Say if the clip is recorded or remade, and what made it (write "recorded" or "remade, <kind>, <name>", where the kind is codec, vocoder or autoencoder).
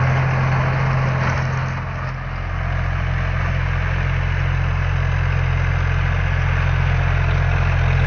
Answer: recorded